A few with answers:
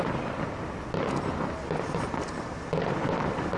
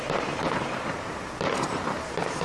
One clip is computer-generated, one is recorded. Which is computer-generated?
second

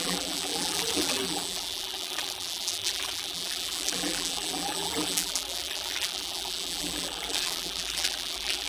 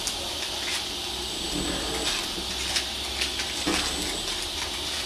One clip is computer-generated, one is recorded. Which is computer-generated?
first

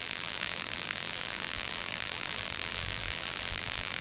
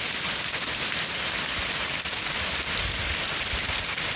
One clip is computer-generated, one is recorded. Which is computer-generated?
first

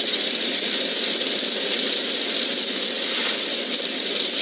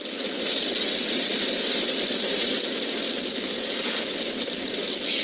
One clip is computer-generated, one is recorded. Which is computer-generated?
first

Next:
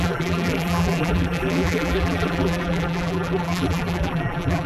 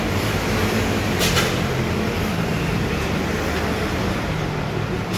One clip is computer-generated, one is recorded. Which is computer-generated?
first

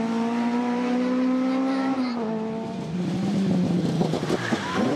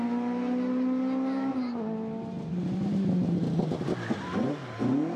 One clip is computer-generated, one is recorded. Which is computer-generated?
first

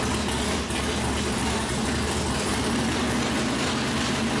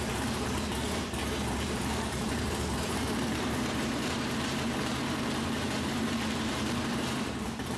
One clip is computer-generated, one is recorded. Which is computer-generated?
second